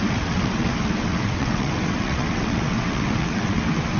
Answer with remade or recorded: remade